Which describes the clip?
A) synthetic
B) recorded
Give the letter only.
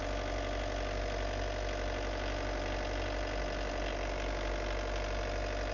B